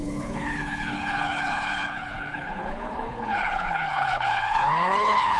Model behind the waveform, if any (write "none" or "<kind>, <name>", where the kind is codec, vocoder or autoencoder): codec, HILCodec